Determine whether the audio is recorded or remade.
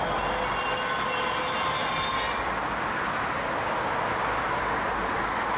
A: recorded